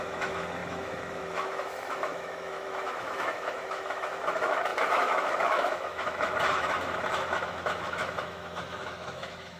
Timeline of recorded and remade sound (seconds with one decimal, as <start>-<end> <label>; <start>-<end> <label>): 0.0-9.6 remade